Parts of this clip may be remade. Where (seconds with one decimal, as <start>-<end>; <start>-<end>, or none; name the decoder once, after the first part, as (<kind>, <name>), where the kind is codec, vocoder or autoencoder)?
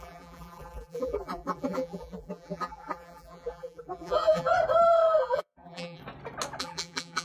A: 0.0-4.5 (vocoder, BigVGAN v2); 5.2-6.0; 6.6-7.2